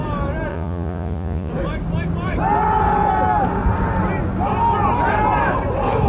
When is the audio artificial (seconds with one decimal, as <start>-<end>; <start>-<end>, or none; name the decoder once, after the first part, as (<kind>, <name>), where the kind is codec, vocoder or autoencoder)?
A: 0.5-1.5 (vocoder, Vocos)